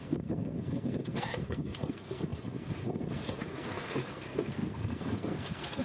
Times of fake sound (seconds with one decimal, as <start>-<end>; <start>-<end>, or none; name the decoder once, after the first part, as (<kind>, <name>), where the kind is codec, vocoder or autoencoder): 0.0-5.8 (codec, SNAC)